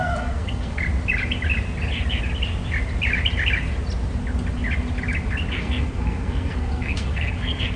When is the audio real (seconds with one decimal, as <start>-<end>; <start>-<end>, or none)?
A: 0.8-5.5